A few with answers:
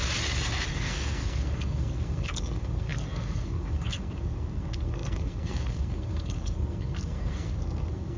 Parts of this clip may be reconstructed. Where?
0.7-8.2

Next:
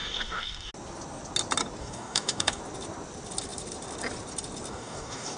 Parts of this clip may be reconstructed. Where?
0.0-0.7; 1.8-2.6; 4.7-5.4

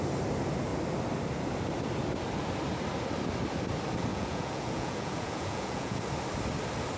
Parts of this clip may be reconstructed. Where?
4.1-6.0

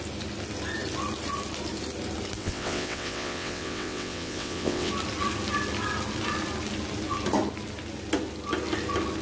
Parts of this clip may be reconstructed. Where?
2.4-4.9

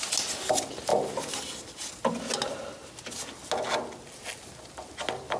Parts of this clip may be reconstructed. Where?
none

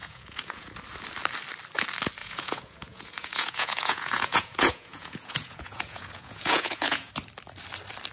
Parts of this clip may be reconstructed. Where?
0.0-0.7; 2.2-7.1